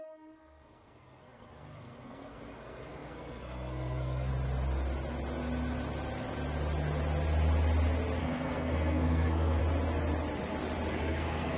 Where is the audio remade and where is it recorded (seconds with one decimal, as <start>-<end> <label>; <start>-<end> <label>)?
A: 0.0-4.3 remade; 4.3-8.2 recorded; 8.2-9.6 remade; 9.6-10.9 recorded; 10.9-11.6 remade